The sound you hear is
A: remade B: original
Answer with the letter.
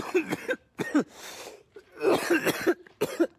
A